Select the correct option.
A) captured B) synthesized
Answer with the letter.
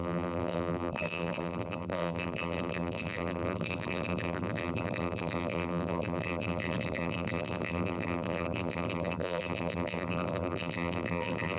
B